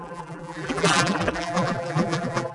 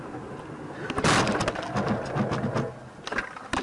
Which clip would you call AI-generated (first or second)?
first